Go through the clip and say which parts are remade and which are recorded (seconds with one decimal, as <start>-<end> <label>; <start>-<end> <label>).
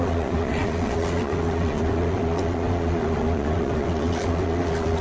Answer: 0.0-5.0 remade